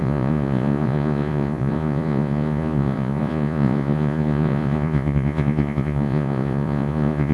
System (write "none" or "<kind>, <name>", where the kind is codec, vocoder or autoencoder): vocoder, Vocos